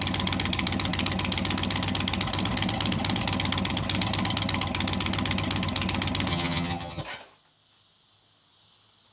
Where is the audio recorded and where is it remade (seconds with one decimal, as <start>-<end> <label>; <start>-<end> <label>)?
0.0-6.3 recorded; 6.3-7.0 remade; 7.0-9.1 recorded